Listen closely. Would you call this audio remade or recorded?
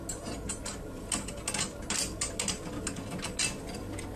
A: recorded